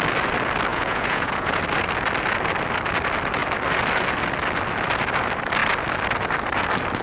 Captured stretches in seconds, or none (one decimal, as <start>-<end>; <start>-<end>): 0.0-0.7; 1.6-7.0